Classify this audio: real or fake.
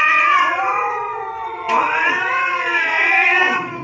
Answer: fake